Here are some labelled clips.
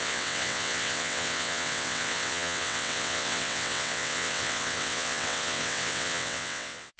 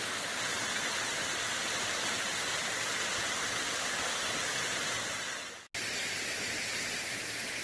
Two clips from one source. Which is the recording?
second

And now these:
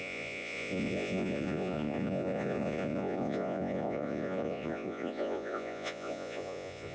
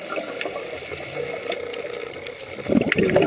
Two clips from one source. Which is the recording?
second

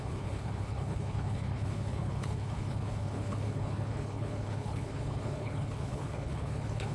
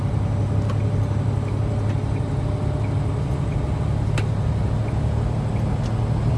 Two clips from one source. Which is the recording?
second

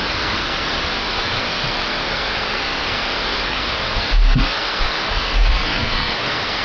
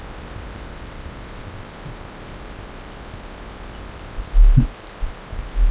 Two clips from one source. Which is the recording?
second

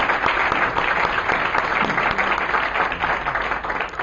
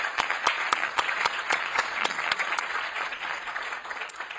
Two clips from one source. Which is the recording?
first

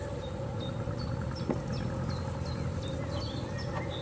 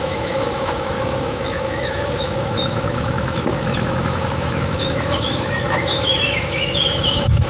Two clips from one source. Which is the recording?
first